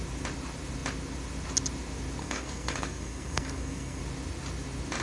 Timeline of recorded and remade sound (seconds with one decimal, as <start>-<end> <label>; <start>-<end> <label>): 0.0-2.2 recorded; 2.2-4.0 remade; 4.0-5.0 recorded